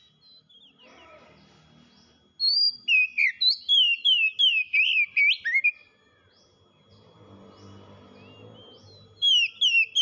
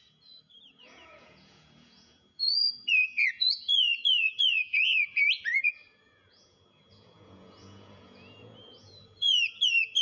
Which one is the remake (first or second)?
second